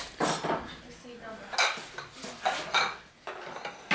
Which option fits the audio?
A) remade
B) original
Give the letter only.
B